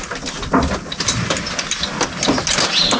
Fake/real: real